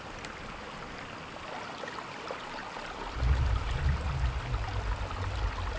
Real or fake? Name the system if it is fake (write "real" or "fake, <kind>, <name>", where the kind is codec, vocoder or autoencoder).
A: real